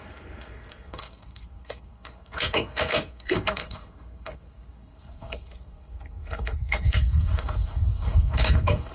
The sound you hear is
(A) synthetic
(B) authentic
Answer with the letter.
A